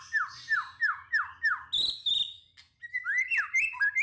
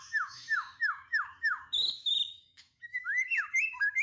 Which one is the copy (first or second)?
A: second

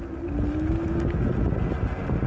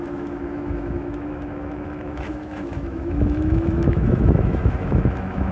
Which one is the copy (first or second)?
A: second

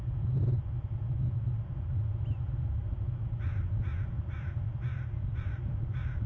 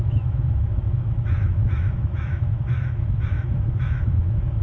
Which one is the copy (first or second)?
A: second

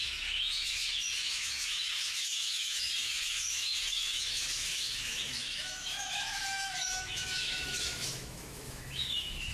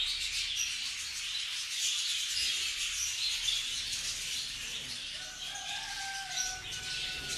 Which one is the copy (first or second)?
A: first